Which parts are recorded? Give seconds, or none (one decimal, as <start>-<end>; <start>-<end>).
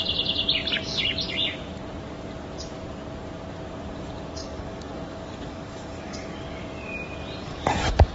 0.0-4.4; 6.6-7.5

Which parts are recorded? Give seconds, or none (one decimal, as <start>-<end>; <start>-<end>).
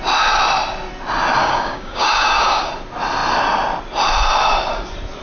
0.0-1.4; 2.7-5.2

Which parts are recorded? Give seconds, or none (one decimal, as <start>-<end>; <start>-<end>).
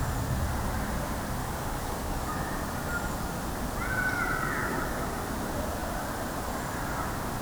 0.0-1.4; 2.4-4.6; 5.2-7.4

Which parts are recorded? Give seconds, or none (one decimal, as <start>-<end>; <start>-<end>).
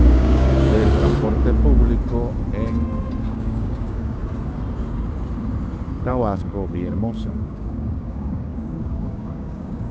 0.8-3.2; 4.2-6.1